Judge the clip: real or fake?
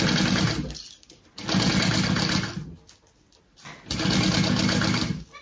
real